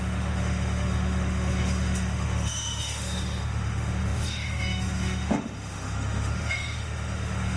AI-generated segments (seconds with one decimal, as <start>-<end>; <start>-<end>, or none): 0.0-7.6